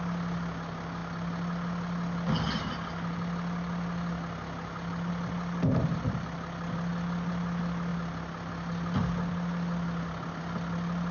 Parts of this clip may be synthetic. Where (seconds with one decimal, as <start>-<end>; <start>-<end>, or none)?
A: none